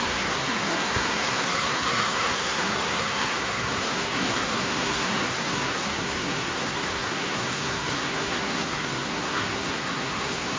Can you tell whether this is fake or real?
fake